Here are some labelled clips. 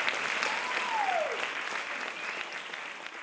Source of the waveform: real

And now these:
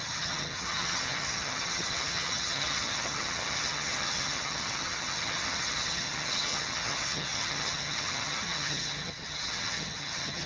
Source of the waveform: fake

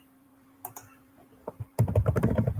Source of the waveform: fake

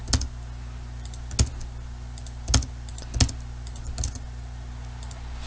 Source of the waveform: real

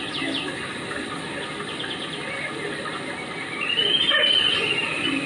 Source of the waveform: real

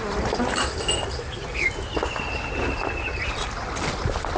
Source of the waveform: real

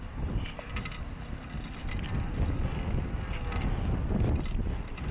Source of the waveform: real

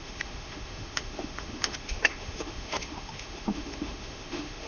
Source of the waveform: fake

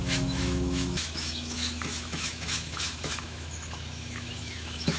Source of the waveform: fake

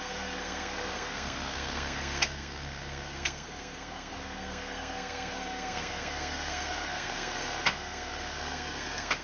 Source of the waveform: fake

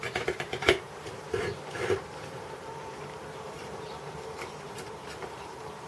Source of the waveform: fake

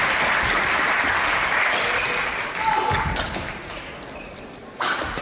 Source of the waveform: real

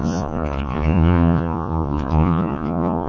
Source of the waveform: fake